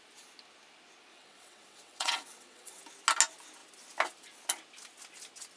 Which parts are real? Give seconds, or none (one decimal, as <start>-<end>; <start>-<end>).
0.0-1.1; 2.8-5.6